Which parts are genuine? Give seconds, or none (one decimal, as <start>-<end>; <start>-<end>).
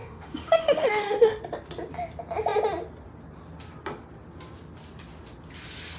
1.4-6.0